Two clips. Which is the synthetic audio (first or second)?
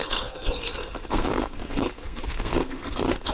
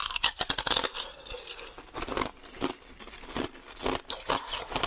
first